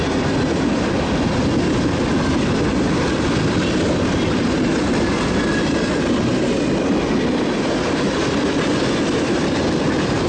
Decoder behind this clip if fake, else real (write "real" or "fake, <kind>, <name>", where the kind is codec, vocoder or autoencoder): real